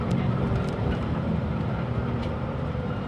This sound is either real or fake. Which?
fake